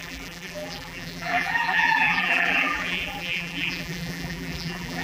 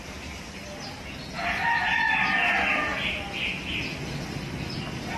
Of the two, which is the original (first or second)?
second